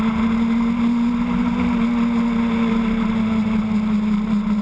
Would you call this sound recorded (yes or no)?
yes